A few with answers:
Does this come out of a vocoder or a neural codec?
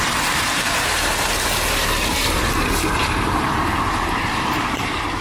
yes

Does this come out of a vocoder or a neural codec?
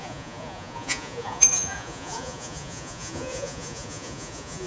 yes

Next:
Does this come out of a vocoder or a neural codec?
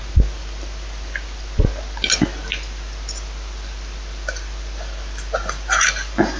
no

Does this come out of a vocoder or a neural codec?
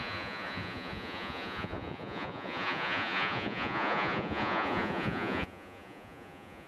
yes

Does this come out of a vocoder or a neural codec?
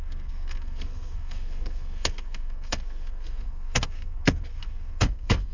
yes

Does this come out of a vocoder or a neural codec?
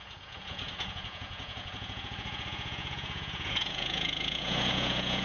yes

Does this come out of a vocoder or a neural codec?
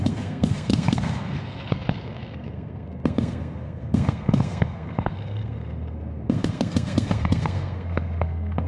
yes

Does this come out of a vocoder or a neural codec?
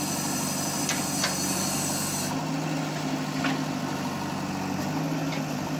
no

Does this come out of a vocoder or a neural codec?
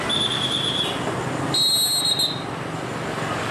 no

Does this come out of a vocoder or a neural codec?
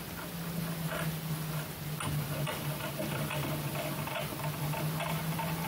yes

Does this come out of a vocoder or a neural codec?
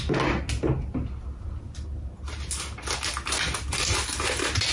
no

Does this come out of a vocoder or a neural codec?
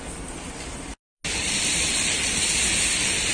no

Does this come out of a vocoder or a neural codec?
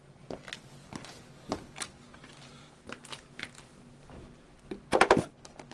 no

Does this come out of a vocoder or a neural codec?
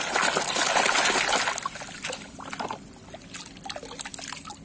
no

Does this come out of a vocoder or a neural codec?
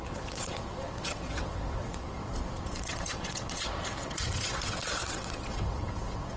yes